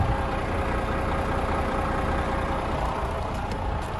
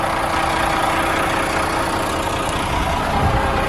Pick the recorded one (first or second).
second